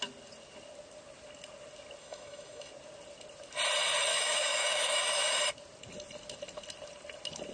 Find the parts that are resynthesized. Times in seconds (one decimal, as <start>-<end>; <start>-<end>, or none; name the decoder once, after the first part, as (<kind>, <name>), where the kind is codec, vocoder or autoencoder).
2.0-2.7 (autoencoder, DAC-VAE); 4.1-5.4